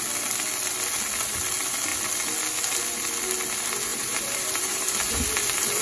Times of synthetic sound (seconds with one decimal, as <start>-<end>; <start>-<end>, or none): 3.9-5.2